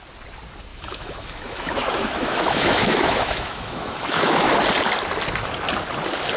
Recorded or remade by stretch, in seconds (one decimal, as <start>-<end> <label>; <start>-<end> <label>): 0.0-0.7 recorded; 0.7-4.5 remade; 4.5-6.4 recorded